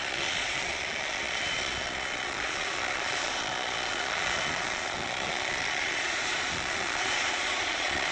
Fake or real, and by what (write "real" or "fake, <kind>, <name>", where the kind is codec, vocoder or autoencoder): fake, vocoder, Vocos